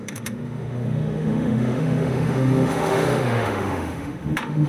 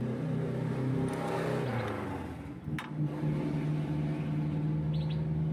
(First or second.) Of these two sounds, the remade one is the first